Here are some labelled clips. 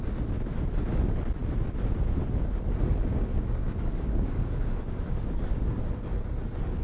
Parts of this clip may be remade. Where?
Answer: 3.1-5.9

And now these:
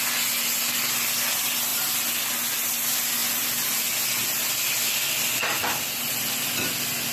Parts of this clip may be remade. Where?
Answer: none

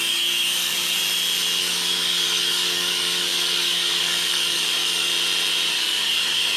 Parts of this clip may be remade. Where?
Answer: 0.0-1.0; 1.6-5.1; 5.7-6.6

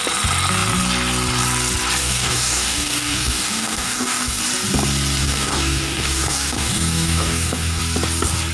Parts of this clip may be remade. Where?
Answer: 2.0-4.4; 5.2-7.8

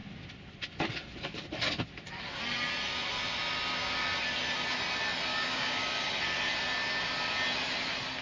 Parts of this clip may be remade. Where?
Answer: 5.3-5.8